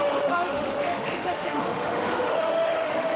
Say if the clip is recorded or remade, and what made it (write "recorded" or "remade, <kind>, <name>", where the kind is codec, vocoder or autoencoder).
remade, autoencoder, DAC-VAE